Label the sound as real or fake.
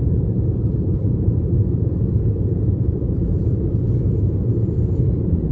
fake